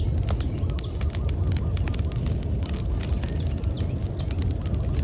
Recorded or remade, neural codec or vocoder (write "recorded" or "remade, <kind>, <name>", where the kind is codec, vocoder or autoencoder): recorded